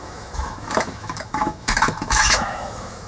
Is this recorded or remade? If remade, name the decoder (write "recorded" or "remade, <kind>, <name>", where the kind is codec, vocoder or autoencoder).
remade, autoencoder, DAC-VAE